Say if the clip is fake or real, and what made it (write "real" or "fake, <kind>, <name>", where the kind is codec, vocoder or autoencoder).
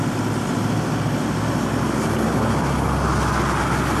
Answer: real